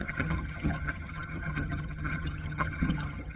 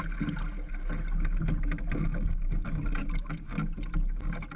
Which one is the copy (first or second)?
first